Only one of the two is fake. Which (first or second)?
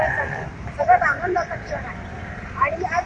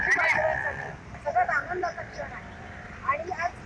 first